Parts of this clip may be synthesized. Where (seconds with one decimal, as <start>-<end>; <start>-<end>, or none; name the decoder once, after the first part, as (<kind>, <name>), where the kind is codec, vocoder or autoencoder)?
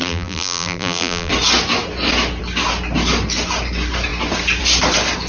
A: 0.0-1.3 (vocoder, BigVGAN v2)